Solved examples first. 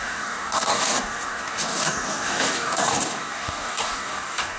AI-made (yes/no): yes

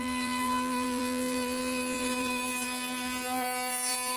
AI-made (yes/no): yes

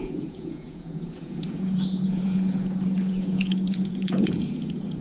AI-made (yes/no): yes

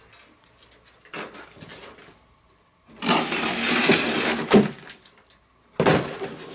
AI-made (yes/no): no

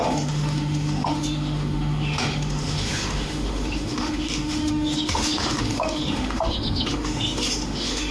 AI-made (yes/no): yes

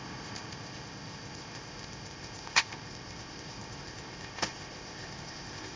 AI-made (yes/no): yes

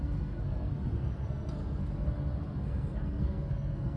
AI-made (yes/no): yes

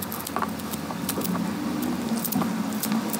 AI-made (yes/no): no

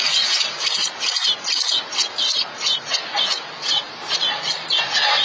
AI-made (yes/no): no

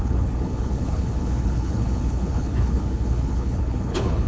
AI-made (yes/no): yes